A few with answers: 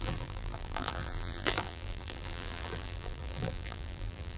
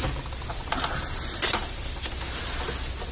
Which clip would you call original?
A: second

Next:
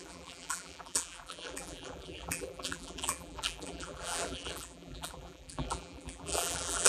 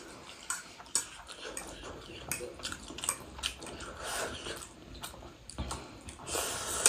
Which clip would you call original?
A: second